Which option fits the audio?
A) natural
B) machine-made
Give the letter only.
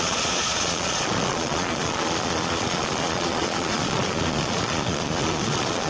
B